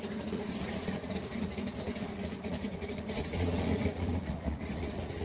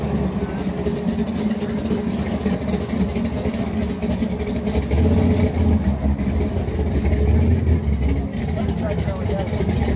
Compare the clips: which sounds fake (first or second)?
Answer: first